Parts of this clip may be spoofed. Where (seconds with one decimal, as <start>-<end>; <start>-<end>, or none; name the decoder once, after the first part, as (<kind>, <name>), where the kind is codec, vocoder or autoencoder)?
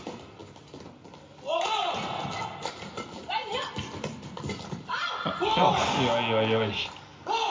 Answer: none